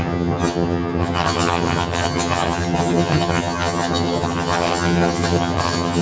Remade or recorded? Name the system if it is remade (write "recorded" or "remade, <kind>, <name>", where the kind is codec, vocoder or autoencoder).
remade, vocoder, HiFi-GAN